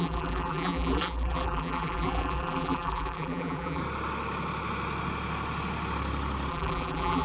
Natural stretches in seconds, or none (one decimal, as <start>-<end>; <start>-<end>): 3.8-6.5